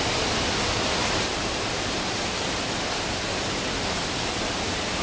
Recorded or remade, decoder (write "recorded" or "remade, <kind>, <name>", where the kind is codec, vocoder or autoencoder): recorded